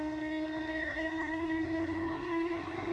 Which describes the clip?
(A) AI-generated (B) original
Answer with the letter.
A